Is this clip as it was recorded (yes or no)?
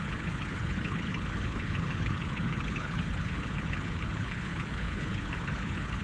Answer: no